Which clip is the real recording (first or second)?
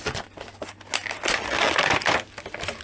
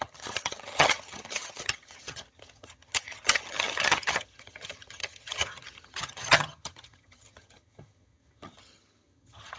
first